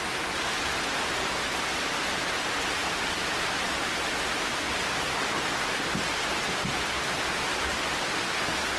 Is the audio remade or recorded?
recorded